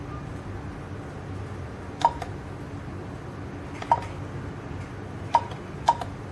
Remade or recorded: recorded